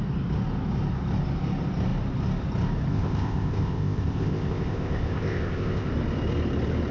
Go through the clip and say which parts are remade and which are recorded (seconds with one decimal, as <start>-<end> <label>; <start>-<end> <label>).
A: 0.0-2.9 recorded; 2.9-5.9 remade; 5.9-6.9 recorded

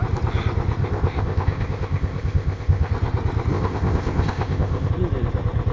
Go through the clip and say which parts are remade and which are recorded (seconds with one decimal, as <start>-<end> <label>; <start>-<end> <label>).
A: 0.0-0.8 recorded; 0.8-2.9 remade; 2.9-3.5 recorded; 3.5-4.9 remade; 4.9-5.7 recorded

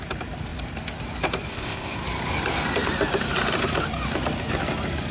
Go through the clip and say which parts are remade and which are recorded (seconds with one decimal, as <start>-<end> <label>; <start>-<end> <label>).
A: 0.0-1.5 recorded; 1.5-2.0 remade; 2.0-5.1 recorded

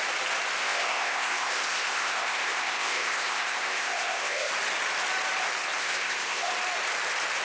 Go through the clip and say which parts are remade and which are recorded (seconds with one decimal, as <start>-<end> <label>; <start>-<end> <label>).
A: 0.0-0.6 recorded; 0.6-4.5 remade; 4.5-5.8 recorded; 5.8-6.5 remade; 6.5-7.4 recorded

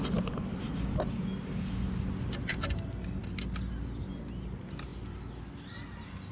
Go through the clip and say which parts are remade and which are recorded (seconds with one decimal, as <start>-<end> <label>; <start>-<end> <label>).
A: 0.0-6.3 recorded

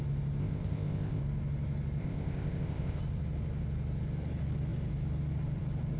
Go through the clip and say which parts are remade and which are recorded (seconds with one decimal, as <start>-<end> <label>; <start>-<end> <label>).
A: 0.0-0.4 recorded; 0.4-1.2 remade; 1.2-2.0 recorded; 2.0-3.0 remade; 3.0-6.0 recorded

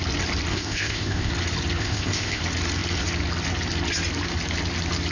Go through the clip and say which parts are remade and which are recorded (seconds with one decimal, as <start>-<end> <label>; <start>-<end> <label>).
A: 0.0-0.5 recorded; 0.5-1.3 remade; 1.3-1.8 recorded; 1.8-2.4 remade; 2.4-5.1 recorded

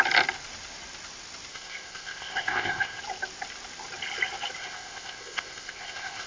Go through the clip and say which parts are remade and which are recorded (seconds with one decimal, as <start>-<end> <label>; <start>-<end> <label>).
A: 0.0-1.5 recorded; 1.5-3.0 remade; 3.0-4.6 recorded; 4.6-6.3 remade